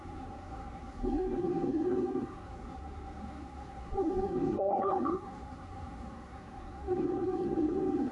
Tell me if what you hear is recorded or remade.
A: remade